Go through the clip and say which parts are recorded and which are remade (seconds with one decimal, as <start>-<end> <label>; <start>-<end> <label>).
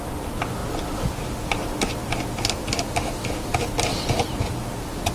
0.0-5.1 recorded